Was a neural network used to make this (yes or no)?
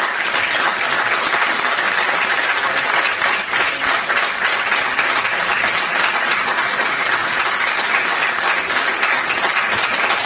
no